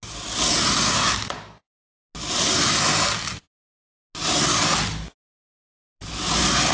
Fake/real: real